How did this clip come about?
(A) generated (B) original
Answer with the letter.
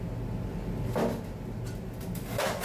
B